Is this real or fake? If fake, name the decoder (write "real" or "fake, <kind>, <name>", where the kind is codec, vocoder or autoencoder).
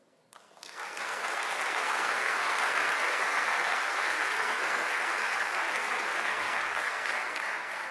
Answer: fake, codec, SNAC